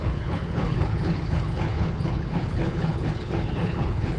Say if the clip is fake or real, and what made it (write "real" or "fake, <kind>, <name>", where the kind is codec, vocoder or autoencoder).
fake, codec, HILCodec